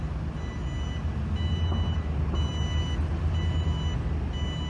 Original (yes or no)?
yes